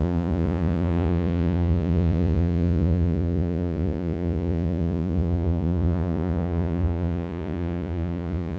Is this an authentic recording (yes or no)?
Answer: no